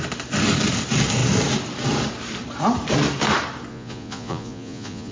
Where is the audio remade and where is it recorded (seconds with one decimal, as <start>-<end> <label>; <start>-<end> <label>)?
0.0-3.7 recorded; 3.7-5.1 remade